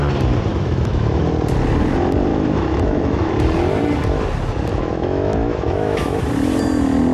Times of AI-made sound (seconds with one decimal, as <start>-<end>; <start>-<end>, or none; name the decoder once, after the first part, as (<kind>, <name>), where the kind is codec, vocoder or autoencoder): 0.5-1.2 (autoencoder, DAC-VAE); 2.3-3.3; 4.7-6.2